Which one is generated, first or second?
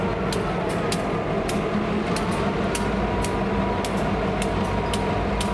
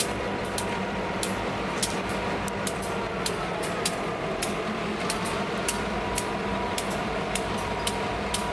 second